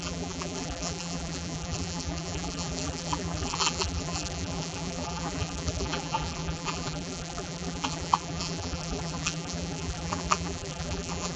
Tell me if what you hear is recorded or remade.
remade